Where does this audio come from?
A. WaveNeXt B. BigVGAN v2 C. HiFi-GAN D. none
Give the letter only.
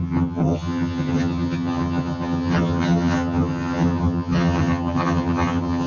C